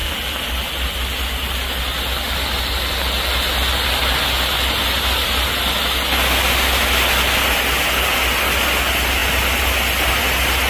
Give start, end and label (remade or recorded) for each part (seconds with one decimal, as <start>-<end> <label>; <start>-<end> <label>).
0.0-0.9 remade; 0.9-10.7 recorded